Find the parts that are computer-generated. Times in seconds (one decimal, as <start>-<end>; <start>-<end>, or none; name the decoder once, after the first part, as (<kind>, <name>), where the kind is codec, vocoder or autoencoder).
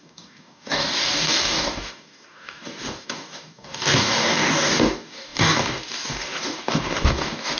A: 0.0-7.6 (codec, DAC)